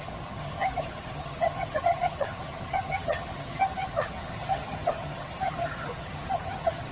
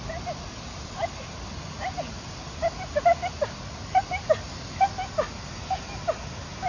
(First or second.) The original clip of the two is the second